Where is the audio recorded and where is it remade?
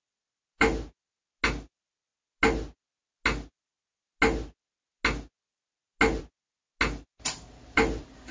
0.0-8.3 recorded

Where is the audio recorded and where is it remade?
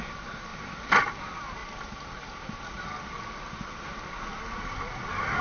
0.0-5.4 recorded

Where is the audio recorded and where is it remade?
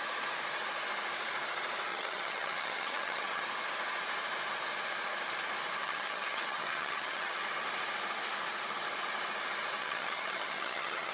0.0-1.9 recorded; 1.9-3.4 remade; 3.4-5.8 recorded; 5.8-7.4 remade; 7.4-9.8 recorded; 9.8-11.1 remade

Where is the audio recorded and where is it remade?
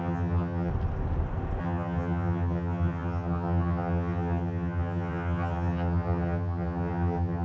0.0-0.7 remade; 0.7-1.6 recorded; 1.6-7.4 remade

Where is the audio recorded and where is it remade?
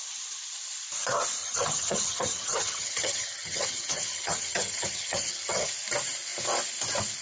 0.0-1.4 recorded; 1.4-5.7 remade; 5.7-7.2 recorded